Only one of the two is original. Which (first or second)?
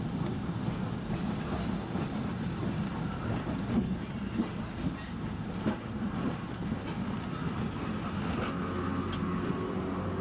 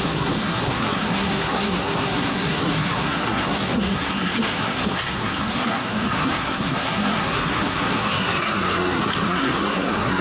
first